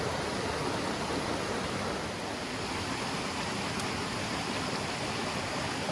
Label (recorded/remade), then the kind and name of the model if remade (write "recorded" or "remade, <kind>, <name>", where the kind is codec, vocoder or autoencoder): recorded